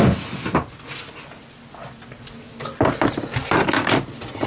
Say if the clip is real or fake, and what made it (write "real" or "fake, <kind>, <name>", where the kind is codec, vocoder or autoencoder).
real